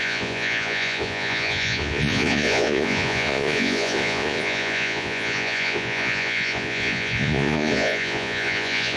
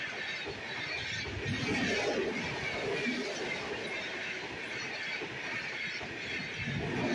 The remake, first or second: first